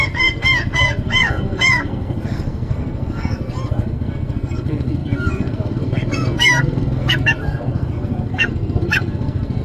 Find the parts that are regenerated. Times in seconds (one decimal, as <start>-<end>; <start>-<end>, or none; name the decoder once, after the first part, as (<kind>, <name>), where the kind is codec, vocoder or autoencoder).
0.0-9.6 (codec, SNAC)